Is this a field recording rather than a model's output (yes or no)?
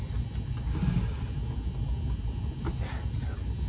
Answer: yes